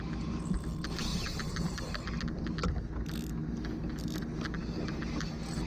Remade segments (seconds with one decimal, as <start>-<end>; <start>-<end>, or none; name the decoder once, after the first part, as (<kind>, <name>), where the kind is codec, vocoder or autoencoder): 1.1-2.2 (vocoder, BigVGAN v2)